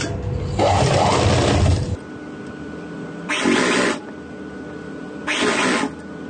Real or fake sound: real